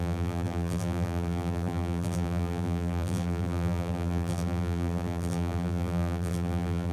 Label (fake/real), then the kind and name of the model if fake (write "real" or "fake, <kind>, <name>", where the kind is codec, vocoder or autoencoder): fake, vocoder, BigVGAN v2